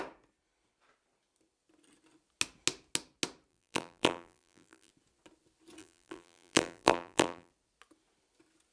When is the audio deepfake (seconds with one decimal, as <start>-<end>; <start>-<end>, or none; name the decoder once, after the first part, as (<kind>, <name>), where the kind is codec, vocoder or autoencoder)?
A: 3.5-4.9 (vocoder, BigVGAN v2); 5.8-7.5